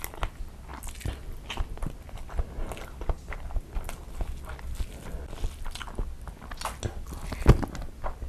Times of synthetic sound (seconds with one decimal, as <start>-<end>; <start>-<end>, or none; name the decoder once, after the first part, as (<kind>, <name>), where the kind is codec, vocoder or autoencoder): none